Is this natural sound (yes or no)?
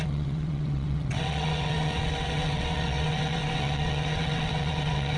no